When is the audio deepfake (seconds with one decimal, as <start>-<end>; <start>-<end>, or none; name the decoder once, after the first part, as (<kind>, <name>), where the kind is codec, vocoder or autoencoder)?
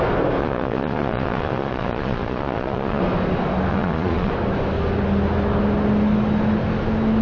0.4-3.0 (vocoder, Vocos); 3.7-4.3